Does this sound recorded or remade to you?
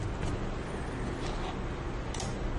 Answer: recorded